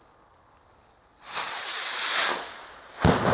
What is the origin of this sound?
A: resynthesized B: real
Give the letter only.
B